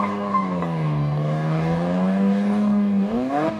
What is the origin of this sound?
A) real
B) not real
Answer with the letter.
B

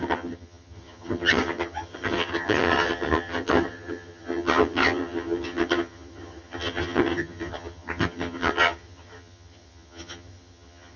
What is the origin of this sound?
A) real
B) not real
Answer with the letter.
B